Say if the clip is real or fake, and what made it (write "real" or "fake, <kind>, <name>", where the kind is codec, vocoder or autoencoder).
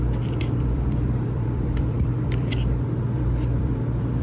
fake, vocoder, BigVGAN v2